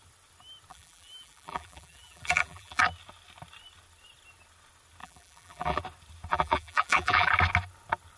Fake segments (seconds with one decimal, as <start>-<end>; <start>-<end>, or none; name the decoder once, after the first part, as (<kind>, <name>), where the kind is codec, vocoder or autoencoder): 0.7-2.8 (vocoder, BigVGAN v2); 5.0-5.8; 6.3-7.3

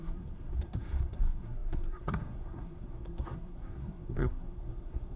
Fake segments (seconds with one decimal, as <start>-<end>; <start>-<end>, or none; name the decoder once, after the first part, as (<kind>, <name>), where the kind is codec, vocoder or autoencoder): 0.0-5.2 (codec, SNAC)

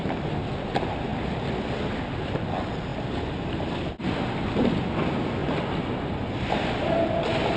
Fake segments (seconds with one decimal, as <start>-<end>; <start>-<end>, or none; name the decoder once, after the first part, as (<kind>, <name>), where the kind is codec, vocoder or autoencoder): none

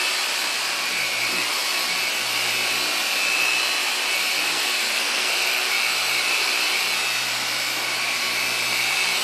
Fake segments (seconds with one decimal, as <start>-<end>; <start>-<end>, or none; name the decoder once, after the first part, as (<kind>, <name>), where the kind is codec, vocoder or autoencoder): 4.3-5.7 (codec, SNAC)

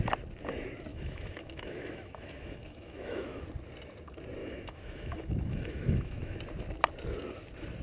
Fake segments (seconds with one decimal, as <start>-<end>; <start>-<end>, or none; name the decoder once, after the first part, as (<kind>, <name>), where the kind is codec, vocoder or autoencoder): 0.9-3.4 (autoencoder, DAC-VAE); 4.4-6.4

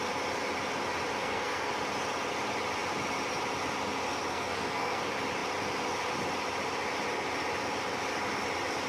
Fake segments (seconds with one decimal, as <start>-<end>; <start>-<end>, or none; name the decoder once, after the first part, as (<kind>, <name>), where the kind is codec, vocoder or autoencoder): 1.2-1.7 (codec, SNAC); 4.3-5.0

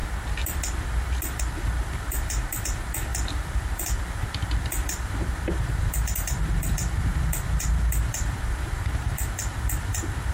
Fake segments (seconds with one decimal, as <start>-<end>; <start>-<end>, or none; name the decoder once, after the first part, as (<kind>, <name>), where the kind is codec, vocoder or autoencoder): 1.4-10.3 (vocoder, BigVGAN v2)

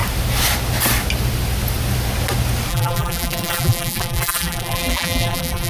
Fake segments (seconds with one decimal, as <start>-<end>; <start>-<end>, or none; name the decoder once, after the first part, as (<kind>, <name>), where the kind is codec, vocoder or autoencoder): 2.7-5.7 (vocoder, BigVGAN v2)